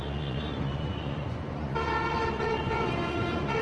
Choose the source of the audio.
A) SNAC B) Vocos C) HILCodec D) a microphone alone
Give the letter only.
B